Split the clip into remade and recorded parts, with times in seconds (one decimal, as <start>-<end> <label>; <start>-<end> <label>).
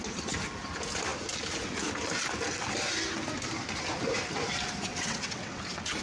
0.0-4.9 recorded; 4.9-5.6 remade; 5.6-6.0 recorded